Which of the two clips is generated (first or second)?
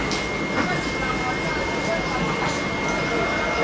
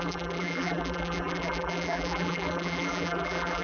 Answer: second